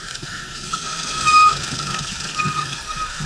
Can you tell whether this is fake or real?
fake